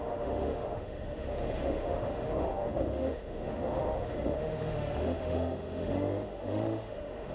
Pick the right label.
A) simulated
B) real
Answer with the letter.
A